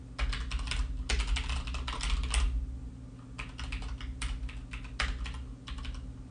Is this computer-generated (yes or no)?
no